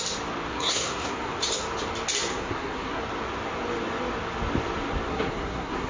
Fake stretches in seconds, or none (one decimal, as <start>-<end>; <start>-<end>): 0.5-1.4; 2.3-3.0; 5.1-5.9